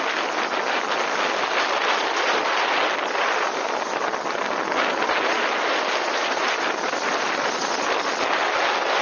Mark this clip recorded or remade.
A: recorded